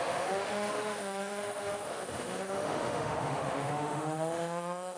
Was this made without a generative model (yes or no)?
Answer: no